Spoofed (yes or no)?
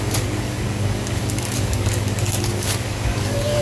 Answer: yes